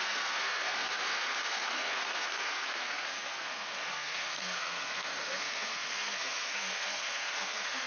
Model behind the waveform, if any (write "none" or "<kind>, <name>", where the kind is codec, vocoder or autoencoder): codec, SNAC